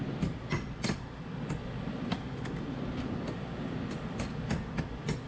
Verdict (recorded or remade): remade